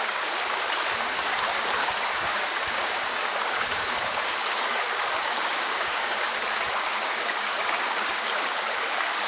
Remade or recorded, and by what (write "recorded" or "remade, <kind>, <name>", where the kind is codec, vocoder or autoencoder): remade, codec, DAC